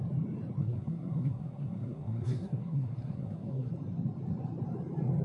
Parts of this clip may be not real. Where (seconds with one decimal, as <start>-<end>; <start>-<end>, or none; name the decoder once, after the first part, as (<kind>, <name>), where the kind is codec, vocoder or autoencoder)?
0.6-3.7 (codec, SNAC)